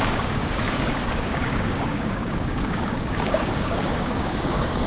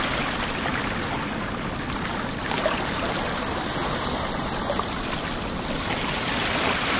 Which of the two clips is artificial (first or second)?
first